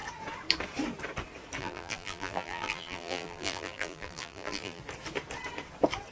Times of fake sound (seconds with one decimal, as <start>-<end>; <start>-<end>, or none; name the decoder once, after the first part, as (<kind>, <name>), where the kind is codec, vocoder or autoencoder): 1.6-4.8 (vocoder, BigVGAN v2)